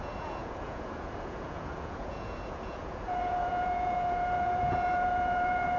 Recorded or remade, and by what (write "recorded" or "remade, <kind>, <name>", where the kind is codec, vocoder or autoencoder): remade, vocoder, Vocos